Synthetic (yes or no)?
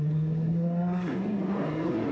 yes